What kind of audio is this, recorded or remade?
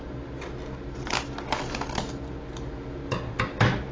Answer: recorded